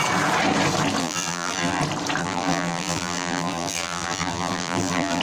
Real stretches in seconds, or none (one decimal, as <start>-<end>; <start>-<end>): 0.0-1.0; 1.8-2.2